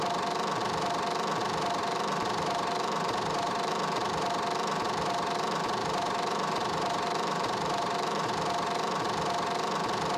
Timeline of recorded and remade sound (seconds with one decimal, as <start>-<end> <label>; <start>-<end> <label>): 0.0-1.8 recorded; 1.8-3.7 remade; 3.7-5.8 recorded; 5.8-8.3 remade; 8.3-10.2 recorded

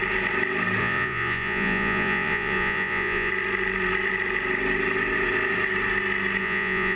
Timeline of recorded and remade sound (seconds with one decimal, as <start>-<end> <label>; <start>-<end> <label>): 0.0-0.8 recorded; 0.8-3.3 remade; 3.3-6.4 recorded; 6.4-7.0 remade

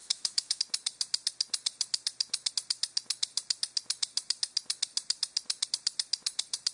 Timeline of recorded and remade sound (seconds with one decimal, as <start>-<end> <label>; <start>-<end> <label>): 0.0-0.6 remade; 0.6-6.7 recorded

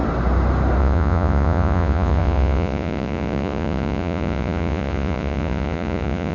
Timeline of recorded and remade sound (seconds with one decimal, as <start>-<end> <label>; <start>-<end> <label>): 0.0-0.8 recorded; 0.8-6.3 remade

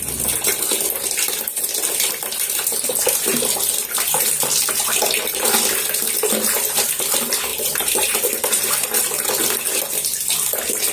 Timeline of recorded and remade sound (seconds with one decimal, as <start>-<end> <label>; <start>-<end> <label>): 0.0-7.5 recorded; 7.5-9.3 remade; 9.3-10.9 recorded

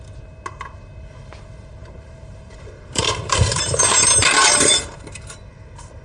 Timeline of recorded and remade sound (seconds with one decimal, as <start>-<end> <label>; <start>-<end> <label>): 0.0-1.8 recorded; 1.8-5.4 remade; 5.4-6.0 recorded

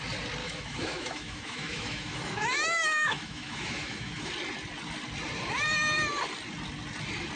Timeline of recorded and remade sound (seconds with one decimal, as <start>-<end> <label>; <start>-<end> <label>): 0.0-0.4 recorded; 0.4-4.3 remade; 4.3-7.4 recorded